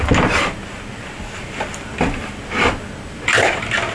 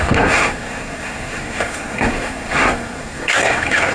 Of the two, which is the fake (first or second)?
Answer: second